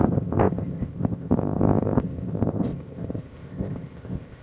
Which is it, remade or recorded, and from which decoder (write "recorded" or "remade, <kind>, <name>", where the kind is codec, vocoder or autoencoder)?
remade, codec, ZipCodec